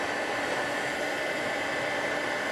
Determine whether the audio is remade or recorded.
remade